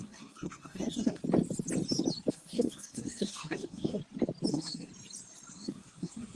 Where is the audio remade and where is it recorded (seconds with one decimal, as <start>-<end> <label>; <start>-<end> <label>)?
0.0-1.2 remade; 1.2-2.3 recorded; 2.3-4.0 remade; 4.0-4.5 recorded; 4.5-4.9 remade; 4.9-5.5 recorded; 5.5-6.4 remade